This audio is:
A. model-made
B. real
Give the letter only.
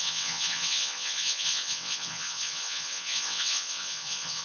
A